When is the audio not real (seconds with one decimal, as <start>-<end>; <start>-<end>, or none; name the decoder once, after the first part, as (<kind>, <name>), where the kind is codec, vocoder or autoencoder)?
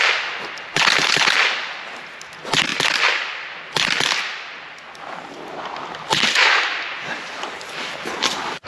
none